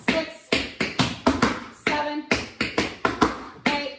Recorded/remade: recorded